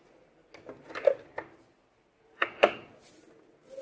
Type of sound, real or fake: real